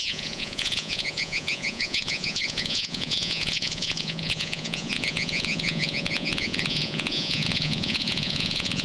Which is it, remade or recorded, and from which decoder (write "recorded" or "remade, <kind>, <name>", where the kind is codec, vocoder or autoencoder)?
remade, vocoder, Vocos